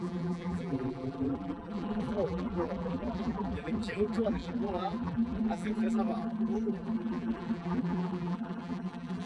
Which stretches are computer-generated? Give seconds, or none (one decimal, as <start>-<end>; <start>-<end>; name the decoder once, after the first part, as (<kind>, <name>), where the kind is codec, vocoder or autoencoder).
0.0-9.3 (vocoder, BigVGAN v2)